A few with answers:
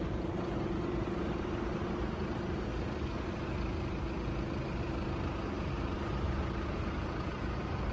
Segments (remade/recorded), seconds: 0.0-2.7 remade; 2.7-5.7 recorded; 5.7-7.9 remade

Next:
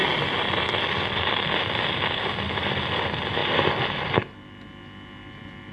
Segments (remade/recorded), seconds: 0.0-5.7 recorded

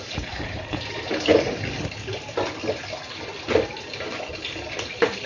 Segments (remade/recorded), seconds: 0.0-1.3 remade; 1.3-4.3 recorded; 4.3-5.3 remade

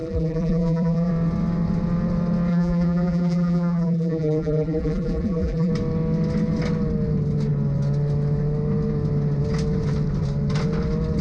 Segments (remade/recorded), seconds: 0.0-1.1 remade; 1.1-2.5 recorded; 2.5-5.7 remade; 5.7-11.2 recorded

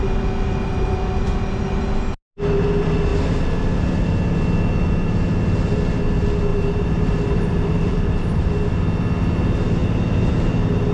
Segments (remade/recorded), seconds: 0.0-6.5 recorded; 6.5-8.5 remade; 8.5-10.9 recorded

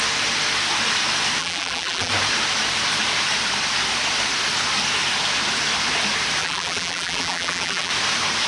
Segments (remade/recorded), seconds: 0.0-1.4 recorded; 1.4-2.1 remade; 2.1-6.4 recorded; 6.4-7.9 remade; 7.9-8.5 recorded